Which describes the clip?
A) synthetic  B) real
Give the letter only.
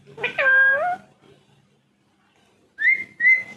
B